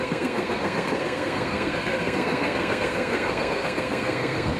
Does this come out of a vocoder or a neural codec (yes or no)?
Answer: yes